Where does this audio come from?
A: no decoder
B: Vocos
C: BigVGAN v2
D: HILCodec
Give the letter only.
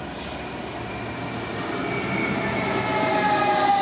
A